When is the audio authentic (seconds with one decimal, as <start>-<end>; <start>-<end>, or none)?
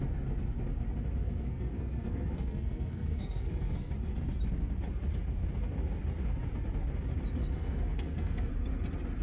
0.0-1.2; 3.9-7.4; 8.5-9.2